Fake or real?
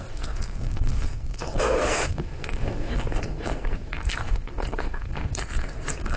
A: fake